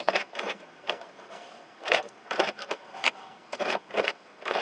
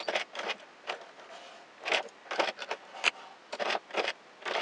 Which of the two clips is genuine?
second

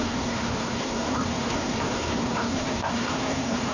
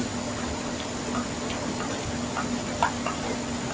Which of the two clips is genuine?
second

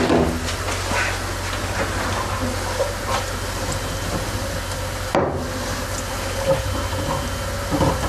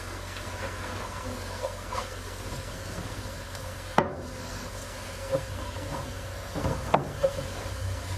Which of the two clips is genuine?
first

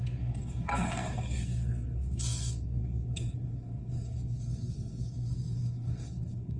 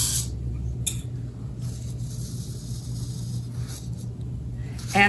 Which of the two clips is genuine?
second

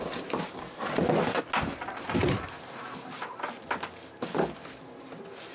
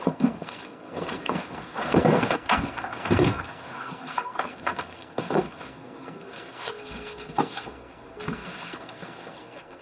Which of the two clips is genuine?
first